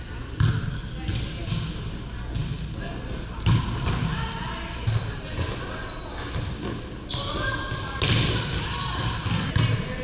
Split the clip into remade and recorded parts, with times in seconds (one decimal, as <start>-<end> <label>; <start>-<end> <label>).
0.0-10.0 recorded

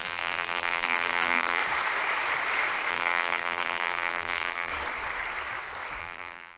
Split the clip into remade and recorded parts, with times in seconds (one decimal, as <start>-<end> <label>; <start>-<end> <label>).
0.0-1.6 remade; 1.6-2.9 recorded; 2.9-4.7 remade; 4.7-6.0 recorded; 6.0-6.6 remade

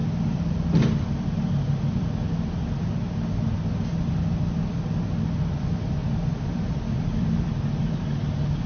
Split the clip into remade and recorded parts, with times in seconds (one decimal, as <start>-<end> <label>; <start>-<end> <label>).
0.0-6.0 recorded; 6.0-7.5 remade; 7.5-8.7 recorded

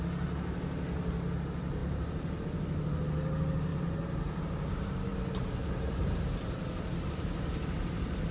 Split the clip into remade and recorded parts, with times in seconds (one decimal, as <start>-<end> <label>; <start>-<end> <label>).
0.0-1.8 recorded; 1.8-2.4 remade; 2.4-3.7 recorded; 3.7-4.4 remade; 4.4-5.1 recorded; 5.1-6.2 remade; 6.2-8.3 recorded